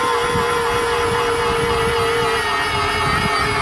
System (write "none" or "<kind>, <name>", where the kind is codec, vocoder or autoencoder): none